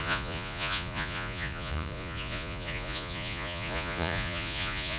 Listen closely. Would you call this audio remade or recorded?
remade